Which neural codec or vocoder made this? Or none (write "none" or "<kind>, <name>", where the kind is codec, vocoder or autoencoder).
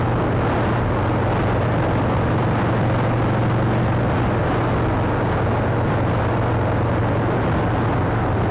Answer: none